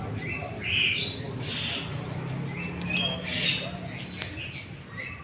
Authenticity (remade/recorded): recorded